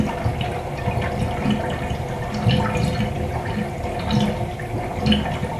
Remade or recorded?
recorded